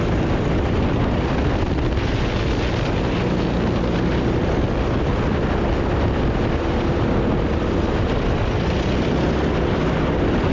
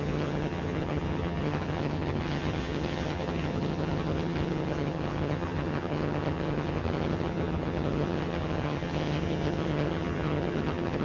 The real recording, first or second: first